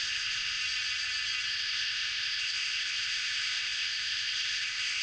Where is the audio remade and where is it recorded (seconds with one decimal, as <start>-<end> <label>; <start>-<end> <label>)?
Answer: 0.0-0.6 remade; 0.6-1.5 recorded; 1.5-5.0 remade